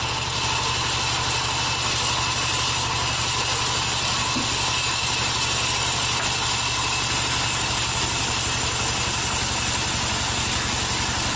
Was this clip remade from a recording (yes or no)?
no